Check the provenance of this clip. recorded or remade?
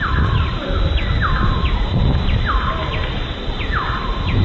remade